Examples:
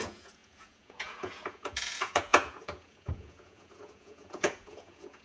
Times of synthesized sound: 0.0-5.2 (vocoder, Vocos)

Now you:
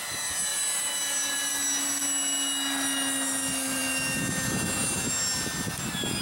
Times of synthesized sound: none